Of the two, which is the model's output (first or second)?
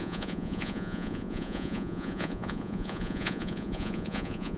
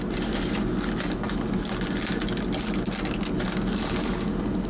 first